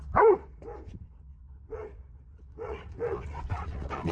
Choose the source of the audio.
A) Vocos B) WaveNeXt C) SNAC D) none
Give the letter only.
A